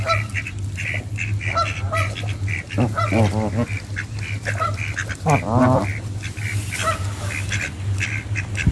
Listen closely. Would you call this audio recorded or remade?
recorded